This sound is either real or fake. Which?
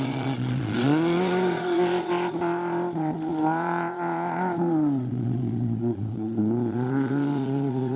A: fake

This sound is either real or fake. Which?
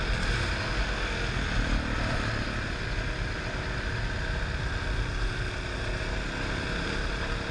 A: real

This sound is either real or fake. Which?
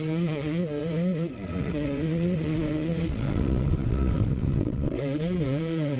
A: fake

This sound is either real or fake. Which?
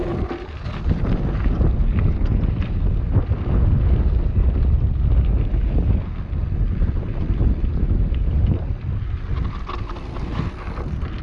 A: real